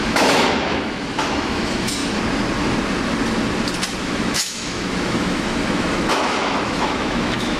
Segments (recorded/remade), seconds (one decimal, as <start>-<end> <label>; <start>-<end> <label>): 0.0-2.0 remade; 2.0-4.0 recorded; 4.0-7.6 remade